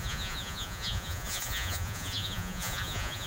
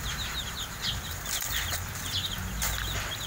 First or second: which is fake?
first